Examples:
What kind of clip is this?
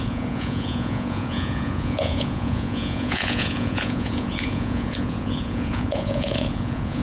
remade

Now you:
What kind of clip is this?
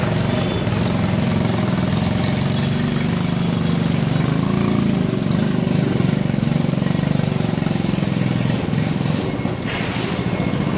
recorded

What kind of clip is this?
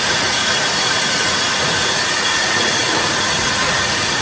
remade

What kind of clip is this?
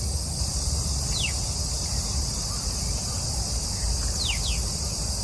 recorded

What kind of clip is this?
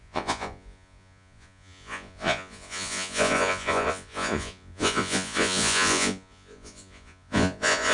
remade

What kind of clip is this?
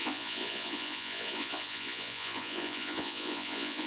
remade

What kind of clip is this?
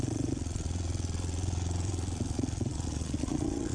remade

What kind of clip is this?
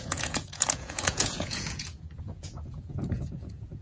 remade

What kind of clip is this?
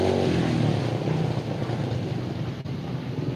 recorded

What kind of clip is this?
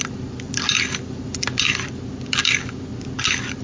recorded